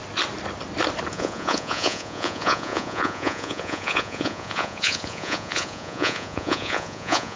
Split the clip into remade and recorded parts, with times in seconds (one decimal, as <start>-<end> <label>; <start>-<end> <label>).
0.0-1.1 recorded; 1.1-7.4 remade